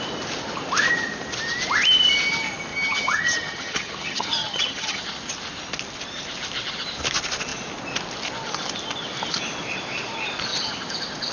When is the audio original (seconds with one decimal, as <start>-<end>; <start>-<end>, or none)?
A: 0.0-2.7; 5.0-11.3